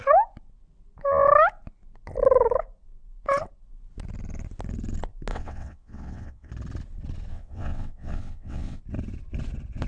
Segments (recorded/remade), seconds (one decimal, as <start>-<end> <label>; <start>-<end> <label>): 0.0-5.3 recorded; 5.3-6.5 remade; 6.5-7.3 recorded; 7.3-8.8 remade; 8.8-9.9 recorded

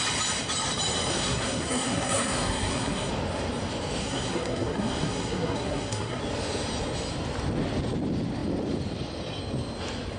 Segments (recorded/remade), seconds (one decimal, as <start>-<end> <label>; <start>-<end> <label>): 0.0-1.1 recorded; 1.1-3.1 remade; 3.1-4.0 recorded; 4.0-6.2 remade; 6.2-10.2 recorded

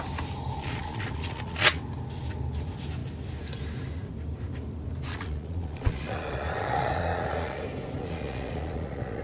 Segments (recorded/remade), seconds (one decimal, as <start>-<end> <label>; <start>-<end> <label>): 0.0-0.6 recorded; 0.6-1.8 remade; 1.8-5.1 recorded; 5.1-7.6 remade; 7.6-8.0 recorded; 8.0-9.2 remade

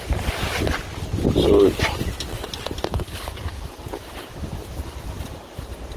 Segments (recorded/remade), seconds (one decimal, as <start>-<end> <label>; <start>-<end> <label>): 0.0-6.0 recorded